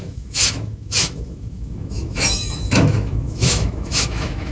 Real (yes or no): no